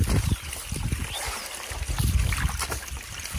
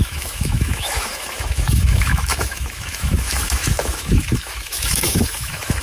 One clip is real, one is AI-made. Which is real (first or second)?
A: first